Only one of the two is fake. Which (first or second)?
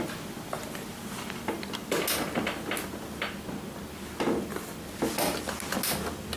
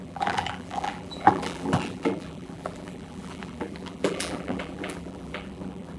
second